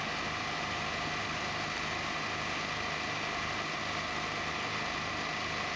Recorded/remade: recorded